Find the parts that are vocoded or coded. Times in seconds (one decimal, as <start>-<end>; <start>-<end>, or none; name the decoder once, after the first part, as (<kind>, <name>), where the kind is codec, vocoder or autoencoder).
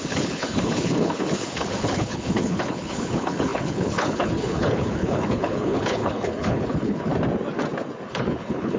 0.0-7.1 (codec, HILCodec); 8.1-8.8